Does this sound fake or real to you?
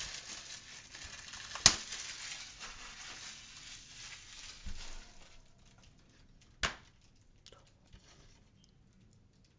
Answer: real